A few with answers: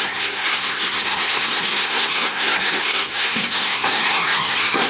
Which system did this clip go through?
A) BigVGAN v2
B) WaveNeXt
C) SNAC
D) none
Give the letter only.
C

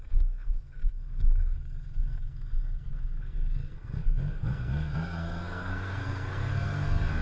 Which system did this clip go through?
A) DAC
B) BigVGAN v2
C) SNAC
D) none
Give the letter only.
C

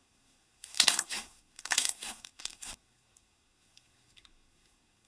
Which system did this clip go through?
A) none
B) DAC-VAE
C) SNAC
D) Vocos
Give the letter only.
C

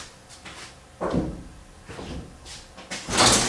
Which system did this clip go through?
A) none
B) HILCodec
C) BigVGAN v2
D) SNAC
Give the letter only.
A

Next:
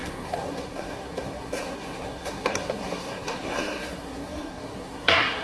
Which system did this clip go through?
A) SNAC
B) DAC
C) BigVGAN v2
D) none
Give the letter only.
A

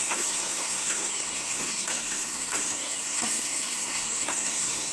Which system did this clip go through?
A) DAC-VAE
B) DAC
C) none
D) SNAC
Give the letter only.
D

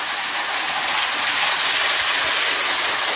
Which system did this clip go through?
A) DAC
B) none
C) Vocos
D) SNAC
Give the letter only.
B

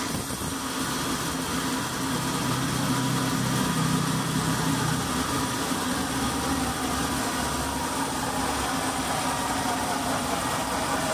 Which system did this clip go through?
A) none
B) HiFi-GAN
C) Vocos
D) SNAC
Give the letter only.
A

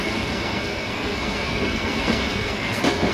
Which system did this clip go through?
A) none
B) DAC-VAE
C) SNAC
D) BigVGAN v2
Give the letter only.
C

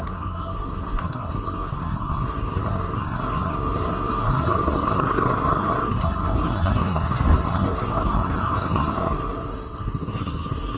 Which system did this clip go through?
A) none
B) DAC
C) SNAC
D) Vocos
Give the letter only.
C